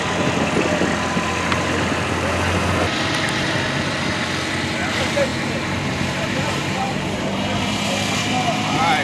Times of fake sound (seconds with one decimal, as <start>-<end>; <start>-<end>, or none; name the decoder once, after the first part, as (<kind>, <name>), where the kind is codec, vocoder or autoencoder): 5.3-8.1 (vocoder, BigVGAN v2)